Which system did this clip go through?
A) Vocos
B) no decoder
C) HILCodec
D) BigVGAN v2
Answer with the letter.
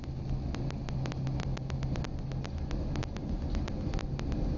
B